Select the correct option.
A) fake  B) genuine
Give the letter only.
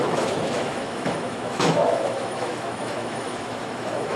A